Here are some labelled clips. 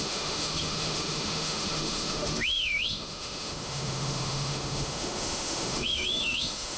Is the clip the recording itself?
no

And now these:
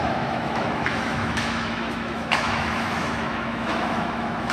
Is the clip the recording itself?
no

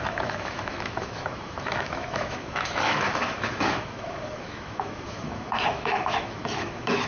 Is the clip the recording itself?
no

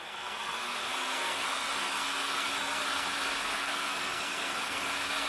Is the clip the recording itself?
no